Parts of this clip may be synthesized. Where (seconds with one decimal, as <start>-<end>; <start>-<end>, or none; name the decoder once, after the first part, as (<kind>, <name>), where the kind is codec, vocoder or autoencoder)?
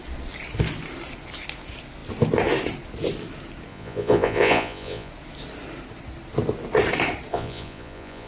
3.7-5.1 (vocoder, Vocos); 7.3-8.3